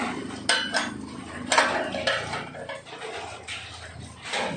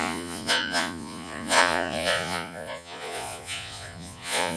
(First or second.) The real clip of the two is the first